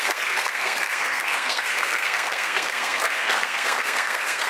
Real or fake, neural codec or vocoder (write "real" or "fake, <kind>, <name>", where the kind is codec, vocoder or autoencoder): fake, codec, SNAC